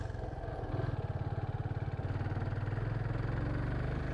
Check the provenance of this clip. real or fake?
real